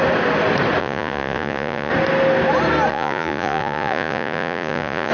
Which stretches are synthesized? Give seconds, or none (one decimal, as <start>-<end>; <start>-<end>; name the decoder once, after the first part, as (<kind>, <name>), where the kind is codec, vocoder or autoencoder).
0.8-1.9 (vocoder, Vocos); 2.9-5.1